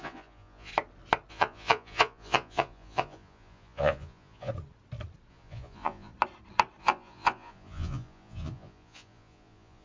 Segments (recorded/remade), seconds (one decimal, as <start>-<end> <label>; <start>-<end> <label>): 0.0-0.7 remade; 0.7-1.3 recorded; 1.3-4.5 remade; 4.5-5.3 recorded; 5.3-6.1 remade; 6.1-6.8 recorded; 6.8-9.8 remade